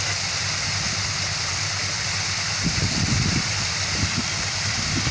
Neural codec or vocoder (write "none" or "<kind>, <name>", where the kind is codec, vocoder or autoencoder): vocoder, BigVGAN v2